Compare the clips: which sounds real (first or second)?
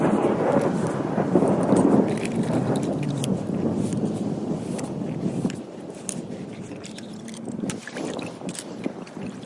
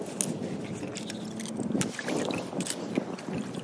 second